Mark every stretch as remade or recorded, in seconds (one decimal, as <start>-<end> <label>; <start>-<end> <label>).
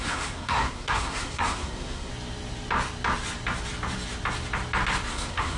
0.0-2.1 remade; 2.1-5.1 recorded; 5.1-5.6 remade